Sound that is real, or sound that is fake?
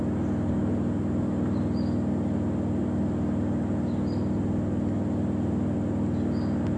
real